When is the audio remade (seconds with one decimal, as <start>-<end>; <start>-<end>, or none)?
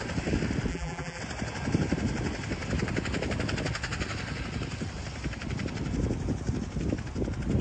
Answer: 0.7-1.2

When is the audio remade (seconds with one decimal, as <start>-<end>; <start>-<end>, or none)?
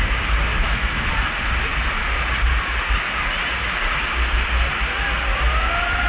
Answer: 0.5-1.1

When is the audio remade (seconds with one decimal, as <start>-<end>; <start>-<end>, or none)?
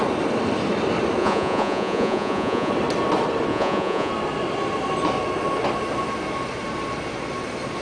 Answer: 1.2-2.7; 3.5-4.1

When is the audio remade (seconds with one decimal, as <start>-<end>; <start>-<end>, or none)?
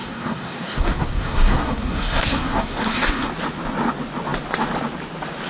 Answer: 0.0-3.3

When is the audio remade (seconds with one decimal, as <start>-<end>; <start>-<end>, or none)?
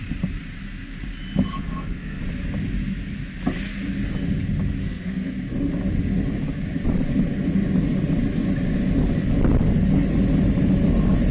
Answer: 1.5-2.2; 4.8-5.3